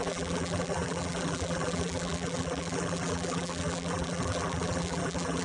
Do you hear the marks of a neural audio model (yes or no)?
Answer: yes